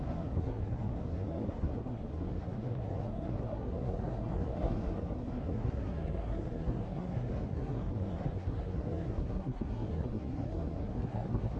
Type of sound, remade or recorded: remade